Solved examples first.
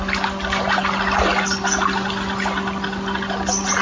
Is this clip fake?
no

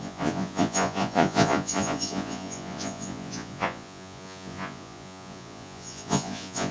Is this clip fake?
yes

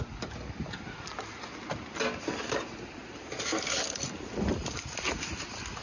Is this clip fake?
no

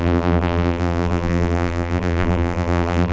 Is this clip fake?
yes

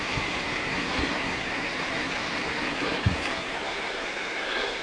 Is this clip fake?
yes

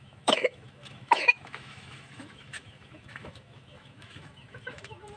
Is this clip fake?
yes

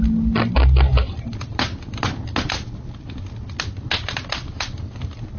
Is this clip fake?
no